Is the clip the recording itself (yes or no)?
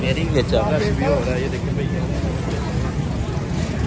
yes